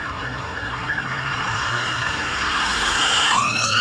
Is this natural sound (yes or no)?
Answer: no